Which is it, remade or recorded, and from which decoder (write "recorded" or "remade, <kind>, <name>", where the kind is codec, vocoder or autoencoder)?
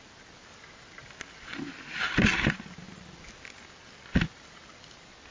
recorded